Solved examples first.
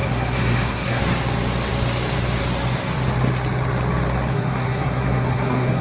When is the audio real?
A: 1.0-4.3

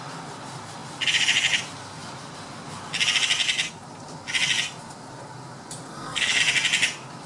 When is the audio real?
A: 0.0-5.9; 6.4-7.3

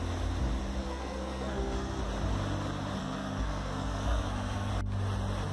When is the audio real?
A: 0.0-0.8; 2.0-3.0; 4.7-5.5

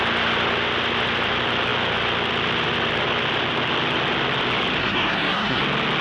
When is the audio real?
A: 0.0-4.8; 5.6-6.0

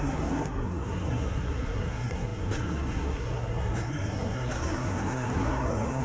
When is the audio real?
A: none